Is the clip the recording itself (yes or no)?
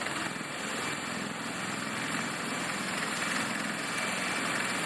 yes